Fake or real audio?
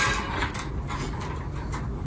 real